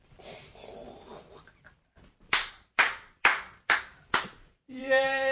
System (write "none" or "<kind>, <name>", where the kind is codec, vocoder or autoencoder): vocoder, BigVGAN v2